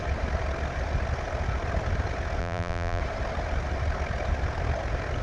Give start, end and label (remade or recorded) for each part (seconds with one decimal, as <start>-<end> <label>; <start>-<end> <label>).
0.0-2.4 recorded; 2.4-3.0 remade; 3.0-5.2 recorded